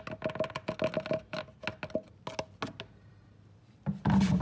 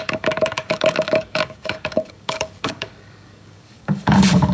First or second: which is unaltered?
first